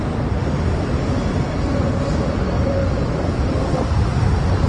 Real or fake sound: real